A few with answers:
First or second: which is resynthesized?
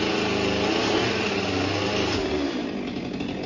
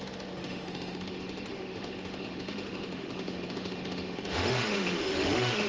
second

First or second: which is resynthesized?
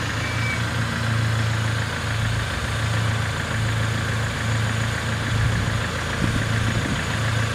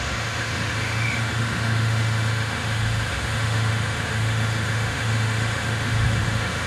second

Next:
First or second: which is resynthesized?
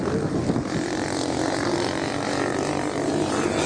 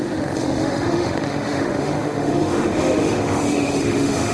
second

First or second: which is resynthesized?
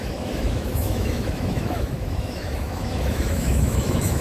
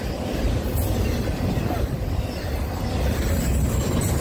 first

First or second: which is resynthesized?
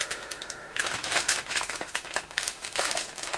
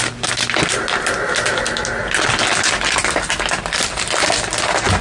first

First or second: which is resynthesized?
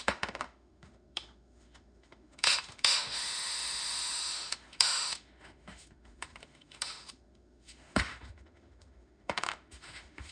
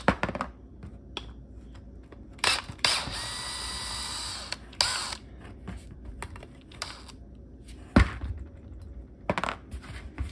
first